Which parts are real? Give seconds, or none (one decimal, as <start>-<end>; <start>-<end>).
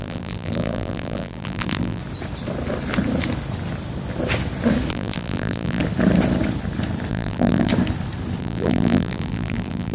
2.0-4.9; 5.8-7.1; 7.7-8.4